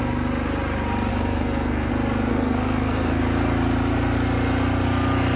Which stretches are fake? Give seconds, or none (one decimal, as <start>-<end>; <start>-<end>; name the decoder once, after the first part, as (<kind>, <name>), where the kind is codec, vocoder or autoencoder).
1.1-1.9 (codec, SNAC); 2.3-3.2